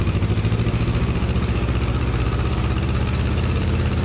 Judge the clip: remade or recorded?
remade